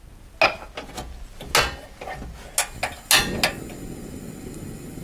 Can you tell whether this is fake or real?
real